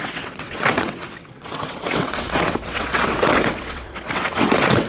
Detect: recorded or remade remade